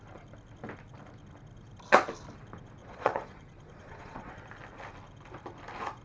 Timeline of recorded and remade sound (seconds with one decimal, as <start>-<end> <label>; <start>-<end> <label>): 0.0-2.8 recorded; 2.8-4.3 remade; 4.3-6.0 recorded